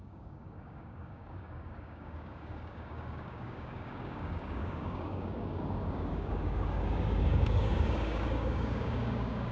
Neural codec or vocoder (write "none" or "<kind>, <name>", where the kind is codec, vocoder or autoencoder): codec, DAC